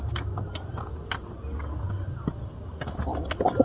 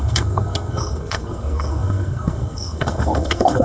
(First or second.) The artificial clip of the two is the second